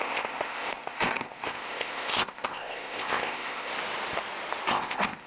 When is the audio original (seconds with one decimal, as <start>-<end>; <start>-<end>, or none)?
3.7-4.7